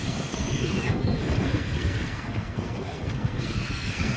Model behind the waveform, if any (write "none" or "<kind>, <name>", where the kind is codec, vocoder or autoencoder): codec, SNAC